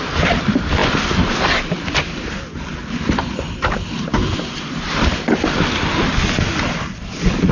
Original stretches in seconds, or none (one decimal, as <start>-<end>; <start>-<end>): 0.8-4.5